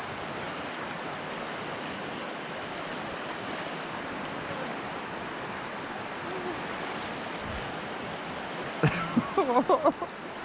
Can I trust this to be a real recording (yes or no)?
yes